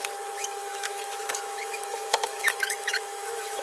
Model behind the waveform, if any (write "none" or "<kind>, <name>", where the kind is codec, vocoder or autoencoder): autoencoder, DAC-VAE